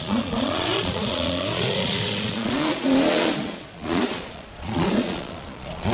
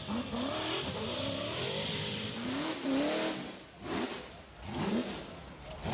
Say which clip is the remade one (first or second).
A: first